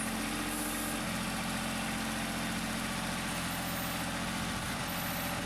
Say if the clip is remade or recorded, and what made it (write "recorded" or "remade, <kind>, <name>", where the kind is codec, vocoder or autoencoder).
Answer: recorded